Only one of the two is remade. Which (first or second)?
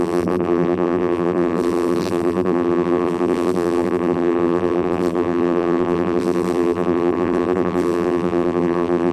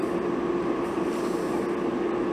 first